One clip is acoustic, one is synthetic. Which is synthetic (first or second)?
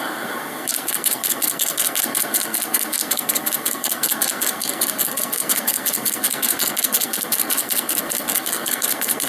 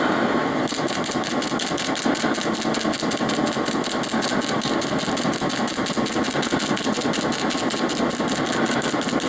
first